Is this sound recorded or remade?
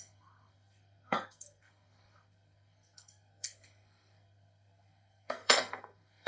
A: remade